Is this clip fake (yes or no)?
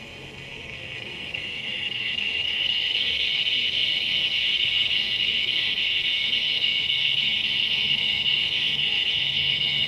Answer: yes